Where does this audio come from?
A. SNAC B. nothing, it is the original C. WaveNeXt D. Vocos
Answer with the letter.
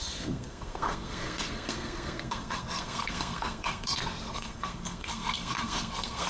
A